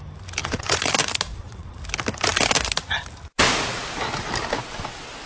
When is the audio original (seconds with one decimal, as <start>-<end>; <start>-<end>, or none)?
0.0-0.4; 0.9-1.3; 1.8-5.3